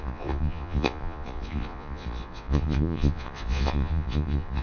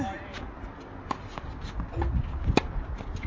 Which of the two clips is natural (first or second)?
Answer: second